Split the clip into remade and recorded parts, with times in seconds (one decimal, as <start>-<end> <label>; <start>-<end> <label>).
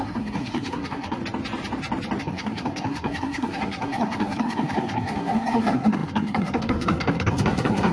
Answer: 0.0-1.2 remade; 1.2-2.2 recorded; 2.2-7.9 remade